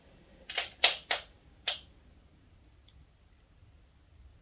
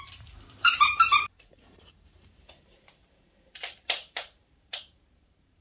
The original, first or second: first